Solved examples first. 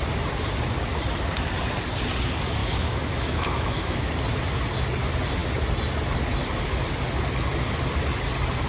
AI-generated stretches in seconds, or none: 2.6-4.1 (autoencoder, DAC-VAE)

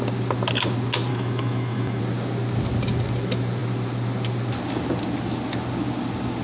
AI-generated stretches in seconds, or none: 1.1-2.0 (autoencoder, DAC-VAE)